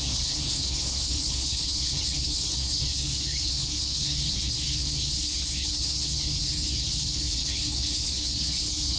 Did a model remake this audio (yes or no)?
yes